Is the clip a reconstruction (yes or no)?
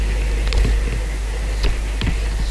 no